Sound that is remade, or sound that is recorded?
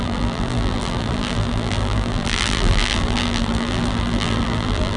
remade